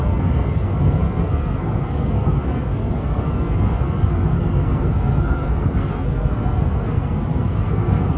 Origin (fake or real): fake